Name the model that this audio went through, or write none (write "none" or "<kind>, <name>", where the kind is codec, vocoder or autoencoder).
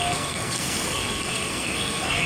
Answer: codec, SNAC